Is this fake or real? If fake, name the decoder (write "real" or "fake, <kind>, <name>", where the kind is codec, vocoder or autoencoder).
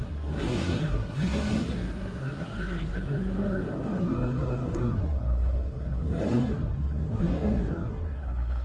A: fake, codec, SNAC